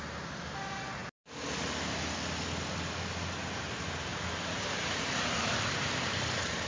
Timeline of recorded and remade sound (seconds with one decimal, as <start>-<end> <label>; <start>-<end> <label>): 0.0-4.1 recorded; 4.1-6.7 remade